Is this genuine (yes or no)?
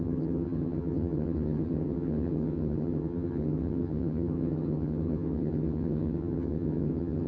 no